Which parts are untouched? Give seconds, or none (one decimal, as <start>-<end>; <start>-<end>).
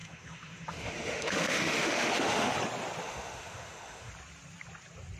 2.5-3.0; 4.1-5.2